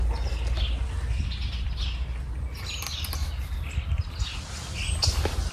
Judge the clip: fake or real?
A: real